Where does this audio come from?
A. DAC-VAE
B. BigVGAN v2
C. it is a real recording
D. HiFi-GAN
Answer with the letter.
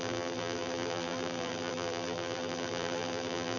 B